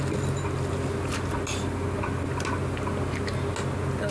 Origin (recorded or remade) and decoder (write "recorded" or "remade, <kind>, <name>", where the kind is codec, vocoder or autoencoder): recorded